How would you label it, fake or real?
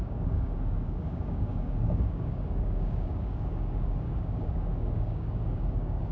fake